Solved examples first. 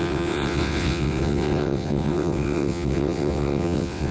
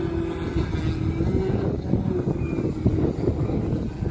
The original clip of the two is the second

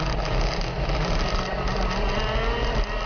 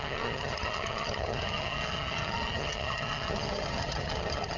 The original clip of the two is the first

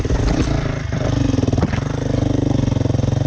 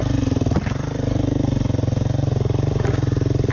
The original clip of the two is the first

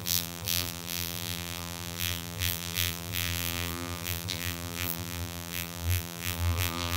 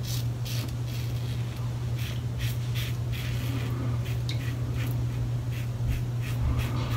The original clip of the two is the second